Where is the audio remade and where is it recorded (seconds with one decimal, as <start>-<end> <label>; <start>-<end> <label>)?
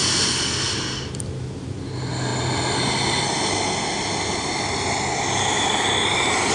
0.0-2.3 remade; 2.3-6.5 recorded